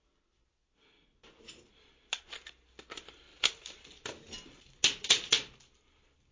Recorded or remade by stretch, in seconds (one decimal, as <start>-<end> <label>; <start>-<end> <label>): 0.0-6.3 recorded